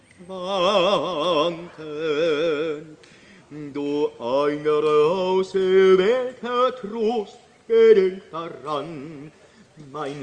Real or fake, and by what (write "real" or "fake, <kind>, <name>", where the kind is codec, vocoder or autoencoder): real